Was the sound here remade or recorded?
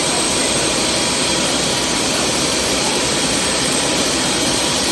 remade